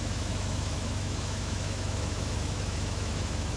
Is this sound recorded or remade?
remade